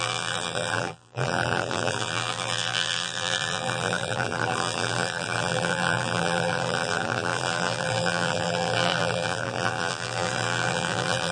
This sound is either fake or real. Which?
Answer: fake